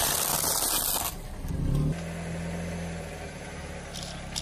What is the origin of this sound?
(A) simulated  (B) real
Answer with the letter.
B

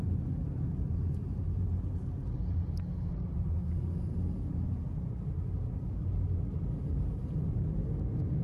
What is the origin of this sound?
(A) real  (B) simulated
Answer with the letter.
A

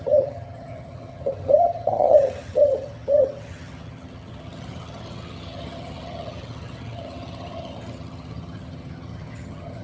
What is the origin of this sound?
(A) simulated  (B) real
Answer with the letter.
A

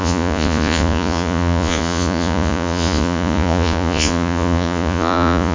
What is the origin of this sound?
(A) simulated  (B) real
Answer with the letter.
A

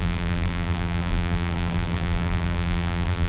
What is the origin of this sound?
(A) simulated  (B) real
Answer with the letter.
A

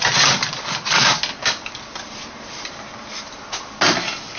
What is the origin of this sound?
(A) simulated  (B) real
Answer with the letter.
B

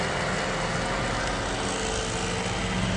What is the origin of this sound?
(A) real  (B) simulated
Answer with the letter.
A